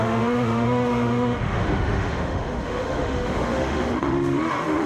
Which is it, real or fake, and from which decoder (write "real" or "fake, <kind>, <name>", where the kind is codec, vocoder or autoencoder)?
fake, autoencoder, DAC-VAE